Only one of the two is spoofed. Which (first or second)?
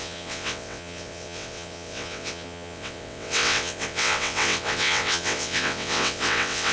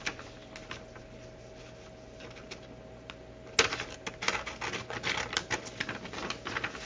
first